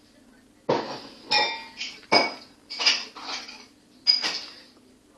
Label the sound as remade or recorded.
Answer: recorded